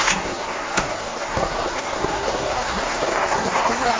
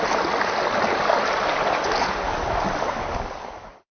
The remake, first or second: first